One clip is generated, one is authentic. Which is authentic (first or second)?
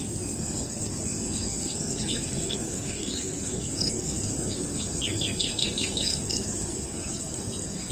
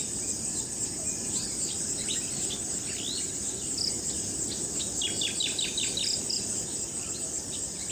second